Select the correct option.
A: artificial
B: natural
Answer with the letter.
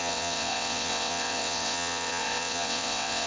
A